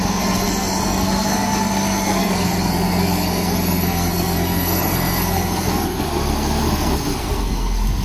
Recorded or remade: remade